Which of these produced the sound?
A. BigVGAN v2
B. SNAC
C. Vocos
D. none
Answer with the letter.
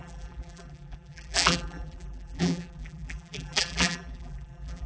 A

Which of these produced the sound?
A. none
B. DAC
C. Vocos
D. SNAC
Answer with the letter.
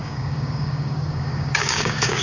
B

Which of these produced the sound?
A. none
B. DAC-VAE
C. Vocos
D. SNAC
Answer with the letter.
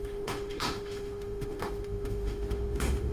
B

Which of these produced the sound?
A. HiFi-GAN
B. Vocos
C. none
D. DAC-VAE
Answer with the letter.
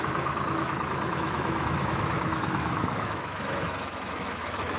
D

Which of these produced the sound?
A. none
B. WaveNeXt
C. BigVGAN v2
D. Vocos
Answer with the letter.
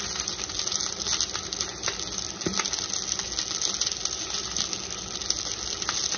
A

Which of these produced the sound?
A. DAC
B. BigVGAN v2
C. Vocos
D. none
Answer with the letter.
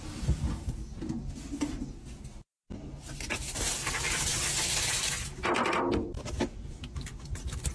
D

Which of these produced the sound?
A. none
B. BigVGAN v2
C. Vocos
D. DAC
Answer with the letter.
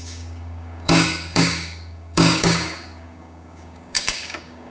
D